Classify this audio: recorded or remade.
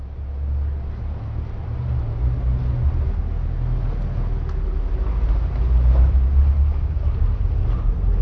recorded